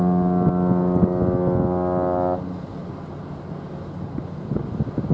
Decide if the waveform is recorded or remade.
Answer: recorded